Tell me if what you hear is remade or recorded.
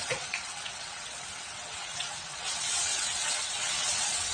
remade